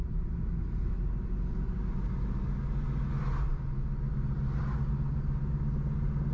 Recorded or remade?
recorded